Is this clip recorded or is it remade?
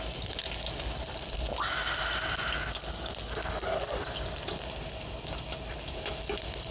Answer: recorded